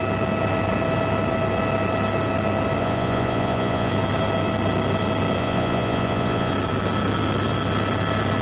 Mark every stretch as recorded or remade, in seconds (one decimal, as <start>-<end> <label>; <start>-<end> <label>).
0.0-2.8 recorded; 2.8-3.9 remade; 3.9-5.4 recorded; 5.4-6.5 remade; 6.5-8.4 recorded